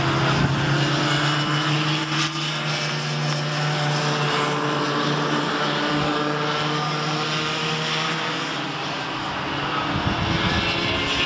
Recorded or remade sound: recorded